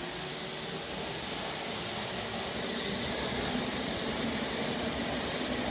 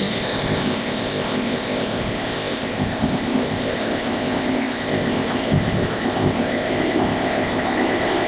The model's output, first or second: second